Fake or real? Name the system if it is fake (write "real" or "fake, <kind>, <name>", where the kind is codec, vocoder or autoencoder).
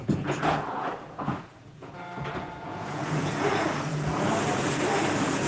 fake, vocoder, Vocos